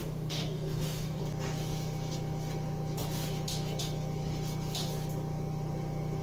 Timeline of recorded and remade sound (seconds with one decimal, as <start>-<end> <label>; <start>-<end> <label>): 0.0-1.2 remade; 1.2-6.2 recorded